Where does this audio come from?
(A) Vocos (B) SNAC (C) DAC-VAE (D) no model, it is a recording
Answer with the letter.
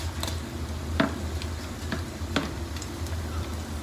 D